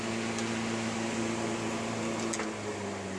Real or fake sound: real